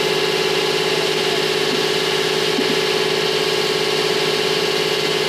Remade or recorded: recorded